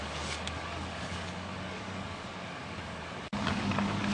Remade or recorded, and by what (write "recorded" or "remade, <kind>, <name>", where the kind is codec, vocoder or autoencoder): remade, codec, DAC